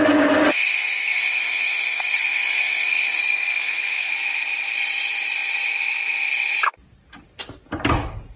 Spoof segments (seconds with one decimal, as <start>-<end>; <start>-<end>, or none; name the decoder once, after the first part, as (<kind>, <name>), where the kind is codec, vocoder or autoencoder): 0.5-4.1 (codec, SNAC)